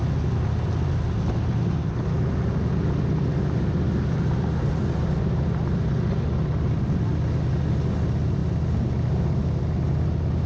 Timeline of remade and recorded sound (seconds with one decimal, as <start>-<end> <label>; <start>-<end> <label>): 0.0-10.5 recorded